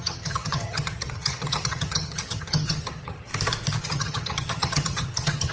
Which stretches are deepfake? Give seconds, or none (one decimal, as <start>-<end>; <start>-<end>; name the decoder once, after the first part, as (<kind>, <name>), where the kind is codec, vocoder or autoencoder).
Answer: 0.0-3.3 (vocoder, HiFi-GAN); 3.8-5.5

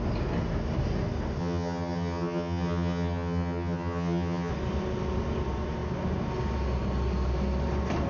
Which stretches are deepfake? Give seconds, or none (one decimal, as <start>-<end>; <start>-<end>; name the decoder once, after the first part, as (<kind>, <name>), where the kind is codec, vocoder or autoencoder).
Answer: 1.4-4.5 (vocoder, HiFi-GAN)

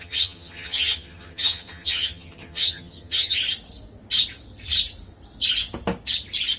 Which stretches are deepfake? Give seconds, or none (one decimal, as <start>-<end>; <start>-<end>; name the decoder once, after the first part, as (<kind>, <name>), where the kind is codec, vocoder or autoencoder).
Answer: 0.0-3.4 (vocoder, HiFi-GAN)

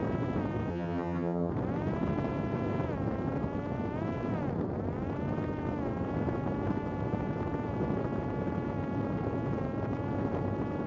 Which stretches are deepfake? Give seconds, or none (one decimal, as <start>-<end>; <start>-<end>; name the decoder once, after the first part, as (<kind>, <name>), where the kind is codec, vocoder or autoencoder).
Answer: 0.7-1.5 (vocoder, HiFi-GAN)

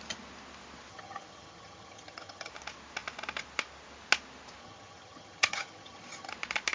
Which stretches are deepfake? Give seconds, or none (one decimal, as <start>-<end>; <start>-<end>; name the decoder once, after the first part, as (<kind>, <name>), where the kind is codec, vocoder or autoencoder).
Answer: 0.9-2.5 (vocoder, HiFi-GAN); 4.6-6.3

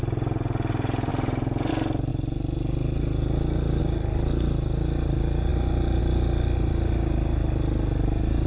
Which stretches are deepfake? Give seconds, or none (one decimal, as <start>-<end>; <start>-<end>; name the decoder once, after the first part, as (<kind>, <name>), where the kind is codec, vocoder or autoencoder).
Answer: none

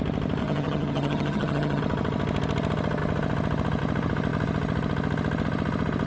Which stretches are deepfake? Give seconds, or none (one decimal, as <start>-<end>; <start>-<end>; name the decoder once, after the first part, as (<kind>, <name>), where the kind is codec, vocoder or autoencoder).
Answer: 0.4-1.8 (vocoder, HiFi-GAN)